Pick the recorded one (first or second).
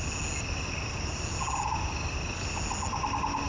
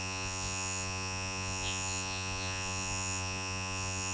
first